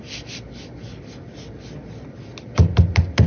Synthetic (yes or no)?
no